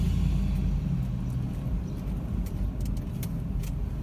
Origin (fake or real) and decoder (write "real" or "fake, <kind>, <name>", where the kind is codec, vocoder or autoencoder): real